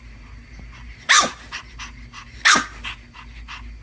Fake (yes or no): no